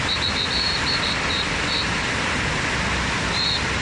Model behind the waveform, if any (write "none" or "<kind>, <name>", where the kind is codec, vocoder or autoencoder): vocoder, BigVGAN v2